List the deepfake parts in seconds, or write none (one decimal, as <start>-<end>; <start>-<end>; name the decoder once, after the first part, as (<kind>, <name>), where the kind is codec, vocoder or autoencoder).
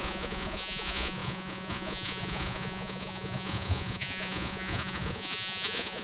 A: 0.0-6.0 (vocoder, Vocos)